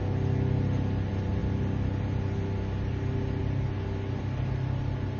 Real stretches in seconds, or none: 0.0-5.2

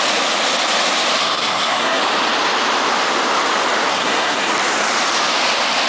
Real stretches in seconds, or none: 0.0-1.2; 2.0-3.9; 4.5-5.9